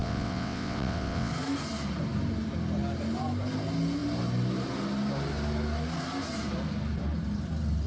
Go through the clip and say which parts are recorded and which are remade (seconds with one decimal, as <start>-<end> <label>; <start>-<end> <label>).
0.0-1.3 remade; 1.3-7.9 recorded